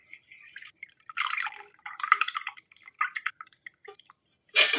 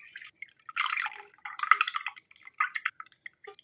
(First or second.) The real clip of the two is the second